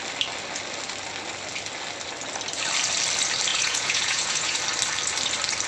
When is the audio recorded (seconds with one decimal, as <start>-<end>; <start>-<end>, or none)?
0.0-3.5; 4.6-5.7